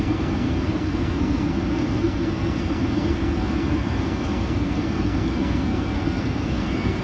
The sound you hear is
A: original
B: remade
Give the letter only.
B